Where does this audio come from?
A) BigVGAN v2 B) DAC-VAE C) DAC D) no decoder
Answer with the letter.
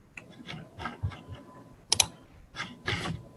A